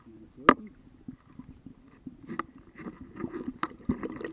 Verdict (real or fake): real